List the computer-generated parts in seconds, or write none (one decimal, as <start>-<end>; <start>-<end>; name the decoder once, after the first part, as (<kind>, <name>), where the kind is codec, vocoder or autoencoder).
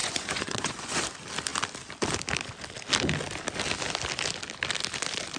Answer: 0.0-1.0 (vocoder, Vocos)